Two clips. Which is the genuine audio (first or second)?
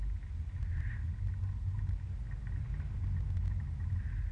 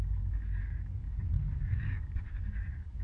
first